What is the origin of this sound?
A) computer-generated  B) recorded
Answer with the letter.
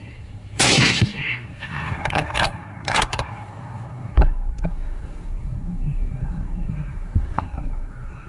A